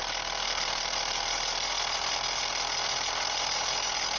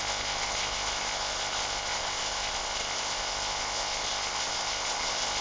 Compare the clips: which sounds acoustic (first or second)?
first